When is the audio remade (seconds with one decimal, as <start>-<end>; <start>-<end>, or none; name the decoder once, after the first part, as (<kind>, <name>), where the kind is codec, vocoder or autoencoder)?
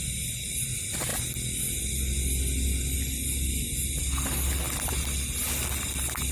none